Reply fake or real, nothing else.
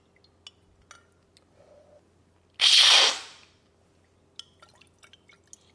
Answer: real